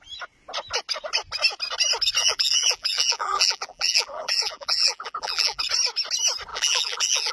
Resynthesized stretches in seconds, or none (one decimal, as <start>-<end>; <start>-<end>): 2.2-5.6; 6.5-7.3